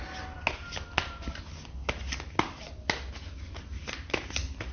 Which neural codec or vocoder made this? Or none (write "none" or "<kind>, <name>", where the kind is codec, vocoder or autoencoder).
none